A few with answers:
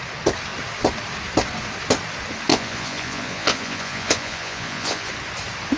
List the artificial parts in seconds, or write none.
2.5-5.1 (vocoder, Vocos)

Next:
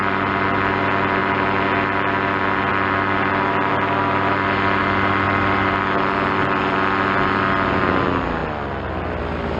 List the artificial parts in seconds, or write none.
none